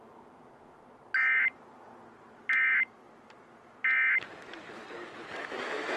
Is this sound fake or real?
real